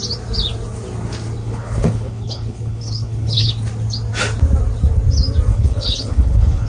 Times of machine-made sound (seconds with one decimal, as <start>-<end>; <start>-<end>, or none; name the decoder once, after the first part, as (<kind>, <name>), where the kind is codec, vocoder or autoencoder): 1.4-3.5 (codec, HILCodec); 5.5-6.7